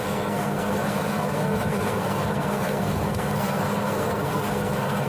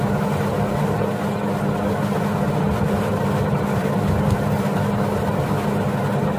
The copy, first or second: first